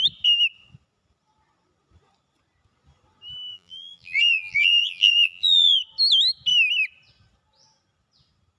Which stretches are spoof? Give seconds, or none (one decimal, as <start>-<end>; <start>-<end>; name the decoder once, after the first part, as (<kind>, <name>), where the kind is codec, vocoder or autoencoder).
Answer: 3.5-5.8 (vocoder, BigVGAN v2)